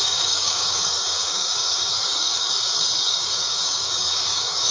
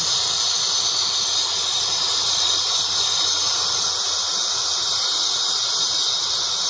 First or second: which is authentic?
second